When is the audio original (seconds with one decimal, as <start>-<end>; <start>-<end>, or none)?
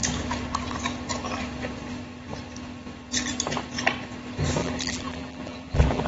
0.0-4.6